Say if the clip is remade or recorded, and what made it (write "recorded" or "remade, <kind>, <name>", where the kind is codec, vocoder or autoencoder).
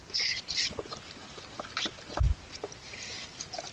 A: recorded